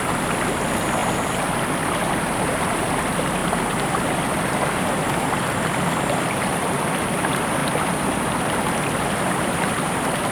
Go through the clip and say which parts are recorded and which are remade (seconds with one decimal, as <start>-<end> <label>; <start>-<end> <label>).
0.0-7.6 recorded; 7.6-8.9 remade; 8.9-10.3 recorded